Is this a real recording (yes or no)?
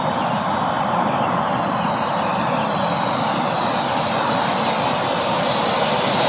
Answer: no